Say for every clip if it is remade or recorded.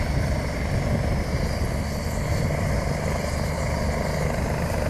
recorded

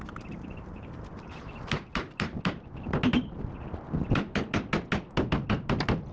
recorded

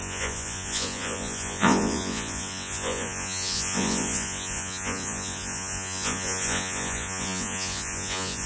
remade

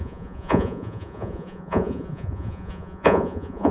remade